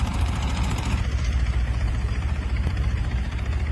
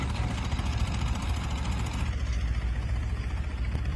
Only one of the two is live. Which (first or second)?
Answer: second